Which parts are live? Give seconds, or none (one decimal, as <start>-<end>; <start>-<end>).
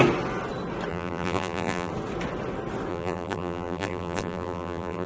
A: 0.0-0.9; 1.9-2.9